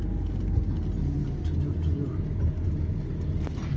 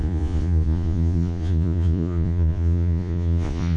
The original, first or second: first